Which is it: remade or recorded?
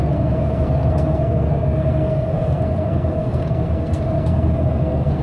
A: remade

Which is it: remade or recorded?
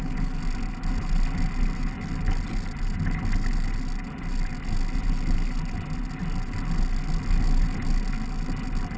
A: recorded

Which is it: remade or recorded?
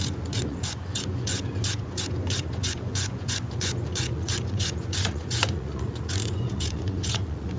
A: remade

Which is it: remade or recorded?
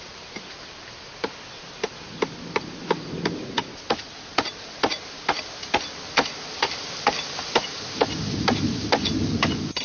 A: recorded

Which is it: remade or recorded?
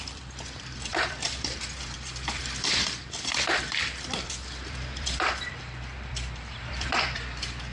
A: remade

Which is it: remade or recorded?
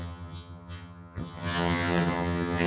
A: remade